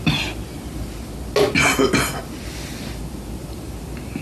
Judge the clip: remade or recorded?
recorded